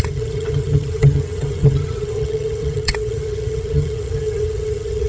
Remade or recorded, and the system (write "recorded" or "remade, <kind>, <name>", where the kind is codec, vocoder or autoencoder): remade, vocoder, HiFi-GAN